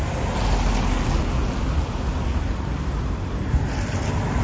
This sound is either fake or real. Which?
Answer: real